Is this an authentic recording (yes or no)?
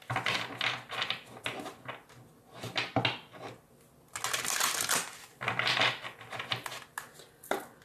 yes